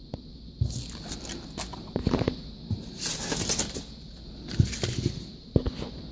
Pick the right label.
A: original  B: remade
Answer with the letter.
A